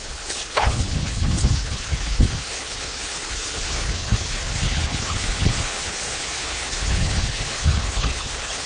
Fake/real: fake